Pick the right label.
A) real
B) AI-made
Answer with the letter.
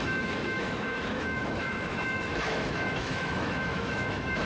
B